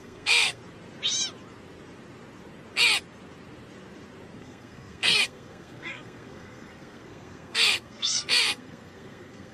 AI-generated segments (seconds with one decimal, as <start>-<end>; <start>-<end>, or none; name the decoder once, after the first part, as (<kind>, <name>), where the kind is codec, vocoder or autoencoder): 0.0-0.6 (codec, SNAC); 4.4-9.5